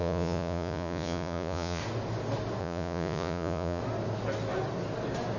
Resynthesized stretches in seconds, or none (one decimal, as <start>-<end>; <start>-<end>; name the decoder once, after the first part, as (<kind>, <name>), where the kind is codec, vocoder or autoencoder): 0.0-1.8 (vocoder, Vocos); 2.6-3.8